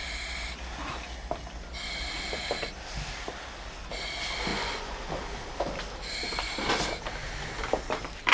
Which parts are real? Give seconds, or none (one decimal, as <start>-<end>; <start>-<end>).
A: 0.0-4.5; 5.1-8.3